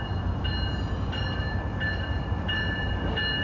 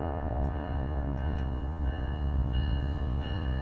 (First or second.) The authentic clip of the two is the first